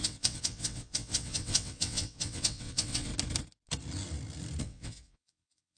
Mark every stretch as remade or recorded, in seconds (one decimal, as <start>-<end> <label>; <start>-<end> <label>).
0.0-3.1 remade; 3.1-4.6 recorded; 4.6-5.8 remade